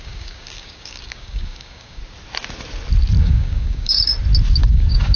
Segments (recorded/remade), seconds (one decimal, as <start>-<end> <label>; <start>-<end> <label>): 0.0-2.0 remade; 2.0-3.2 recorded; 3.2-4.1 remade; 4.1-4.7 recorded; 4.7-5.2 remade